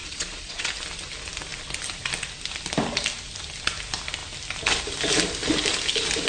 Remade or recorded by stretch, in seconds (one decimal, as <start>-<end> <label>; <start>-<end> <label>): 0.0-0.7 remade; 0.7-6.3 recorded